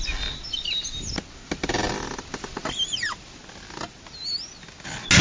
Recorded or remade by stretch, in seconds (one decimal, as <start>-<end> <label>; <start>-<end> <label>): 0.0-5.2 recorded